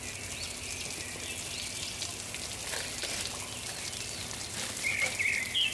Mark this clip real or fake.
real